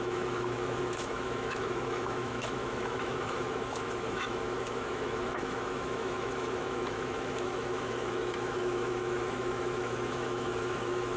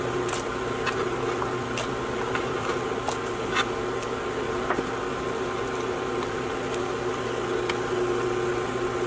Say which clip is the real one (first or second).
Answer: second